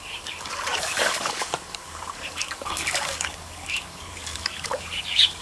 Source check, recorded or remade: remade